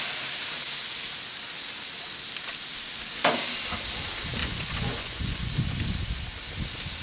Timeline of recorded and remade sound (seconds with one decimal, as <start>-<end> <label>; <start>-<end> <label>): 0.0-4.4 recorded; 4.4-5.5 remade; 5.5-7.0 recorded